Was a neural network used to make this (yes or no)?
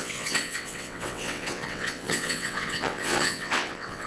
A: yes